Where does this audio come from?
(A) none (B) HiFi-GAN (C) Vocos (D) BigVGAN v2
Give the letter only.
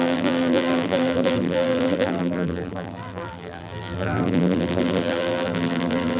D